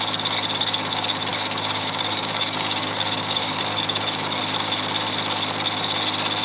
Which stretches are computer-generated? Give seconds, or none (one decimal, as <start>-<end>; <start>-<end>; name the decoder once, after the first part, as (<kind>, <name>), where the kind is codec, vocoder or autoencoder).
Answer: 1.3-4.4 (codec, DAC)